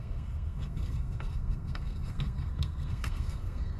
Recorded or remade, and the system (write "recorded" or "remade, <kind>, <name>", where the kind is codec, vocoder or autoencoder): remade, codec, SNAC